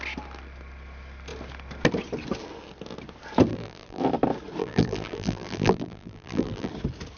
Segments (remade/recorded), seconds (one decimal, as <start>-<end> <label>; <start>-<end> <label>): 0.0-3.5 recorded; 3.5-4.0 remade; 4.0-4.6 recorded; 4.6-6.7 remade; 6.7-7.2 recorded